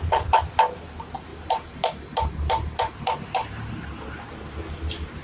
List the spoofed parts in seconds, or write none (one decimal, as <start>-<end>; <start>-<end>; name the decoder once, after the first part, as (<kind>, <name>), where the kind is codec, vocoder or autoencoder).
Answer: 1.3-3.7 (vocoder, BigVGAN v2)